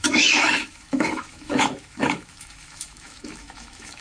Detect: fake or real fake